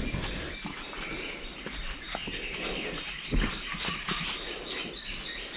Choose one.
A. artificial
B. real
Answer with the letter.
B